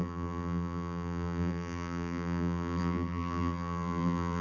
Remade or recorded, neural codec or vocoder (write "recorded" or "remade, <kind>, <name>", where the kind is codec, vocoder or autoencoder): remade, vocoder, BigVGAN v2